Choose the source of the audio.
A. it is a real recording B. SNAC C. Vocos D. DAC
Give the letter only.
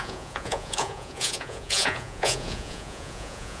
C